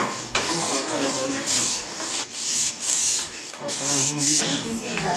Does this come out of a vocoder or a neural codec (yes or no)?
yes